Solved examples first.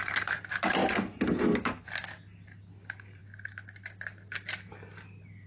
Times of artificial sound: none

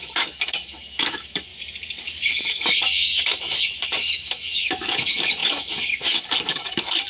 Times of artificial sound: 0.0-1.5 (autoencoder, DAC-VAE); 2.3-7.1

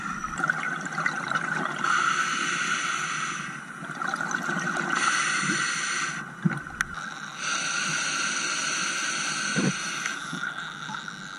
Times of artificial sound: none

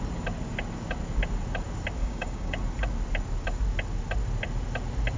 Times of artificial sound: 2.0-2.6 (codec, DAC)